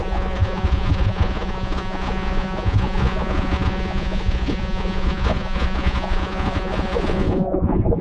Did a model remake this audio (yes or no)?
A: yes